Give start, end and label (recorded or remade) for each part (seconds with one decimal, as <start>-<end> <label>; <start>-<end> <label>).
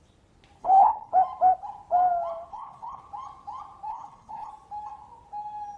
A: 0.0-0.6 recorded; 0.6-1.1 remade; 1.1-2.5 recorded; 2.5-3.0 remade; 3.0-3.9 recorded; 3.9-4.5 remade; 4.5-5.8 recorded